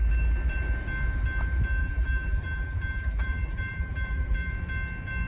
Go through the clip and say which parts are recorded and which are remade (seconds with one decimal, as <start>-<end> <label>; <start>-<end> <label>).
0.0-1.8 recorded; 1.8-4.5 remade; 4.5-5.3 recorded